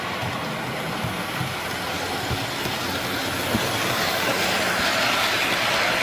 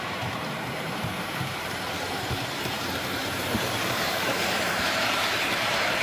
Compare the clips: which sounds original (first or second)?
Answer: first